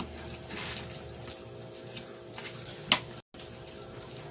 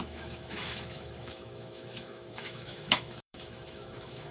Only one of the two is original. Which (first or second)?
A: first